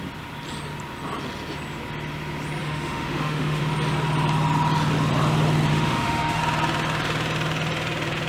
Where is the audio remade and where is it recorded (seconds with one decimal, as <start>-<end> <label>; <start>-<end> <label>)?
0.0-2.6 recorded; 2.6-3.6 remade; 3.6-5.7 recorded; 5.7-6.4 remade; 6.4-8.3 recorded